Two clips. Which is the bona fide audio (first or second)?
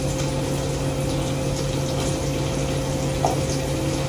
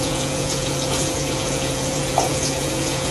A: first